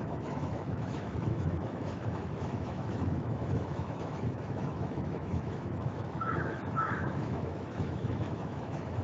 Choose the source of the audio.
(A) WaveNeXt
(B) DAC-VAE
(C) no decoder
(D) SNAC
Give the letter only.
B